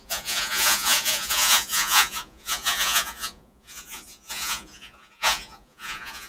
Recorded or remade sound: remade